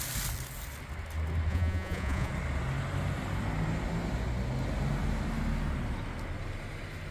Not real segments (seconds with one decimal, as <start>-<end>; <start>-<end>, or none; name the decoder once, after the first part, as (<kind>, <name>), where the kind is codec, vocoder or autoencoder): 1.5-2.3 (vocoder, Vocos)